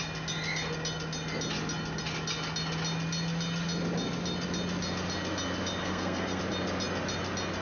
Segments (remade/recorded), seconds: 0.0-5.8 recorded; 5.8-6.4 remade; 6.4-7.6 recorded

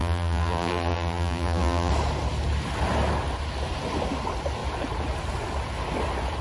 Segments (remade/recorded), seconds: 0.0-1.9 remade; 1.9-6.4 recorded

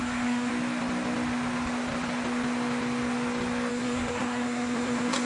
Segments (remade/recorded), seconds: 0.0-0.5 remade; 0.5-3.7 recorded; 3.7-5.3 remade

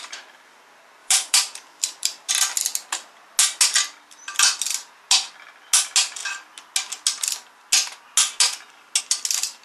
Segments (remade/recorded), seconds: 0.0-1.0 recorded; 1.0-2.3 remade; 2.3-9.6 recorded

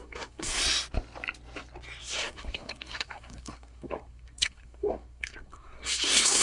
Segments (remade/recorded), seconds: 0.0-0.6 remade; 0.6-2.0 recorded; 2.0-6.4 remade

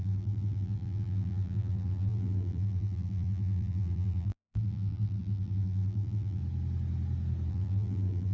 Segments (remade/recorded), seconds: 0.0-6.4 remade; 6.4-7.5 recorded; 7.5-8.3 remade

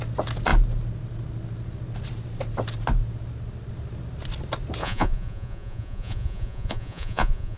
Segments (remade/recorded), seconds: 0.0-4.8 recorded; 4.8-7.6 remade